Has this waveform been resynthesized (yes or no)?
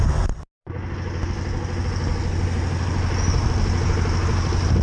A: no